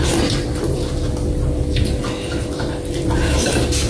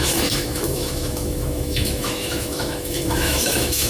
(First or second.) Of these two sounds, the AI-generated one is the second